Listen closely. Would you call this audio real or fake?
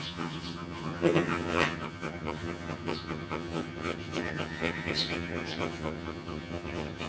fake